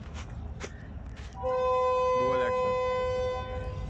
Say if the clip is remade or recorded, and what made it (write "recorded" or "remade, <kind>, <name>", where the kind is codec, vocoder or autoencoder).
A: recorded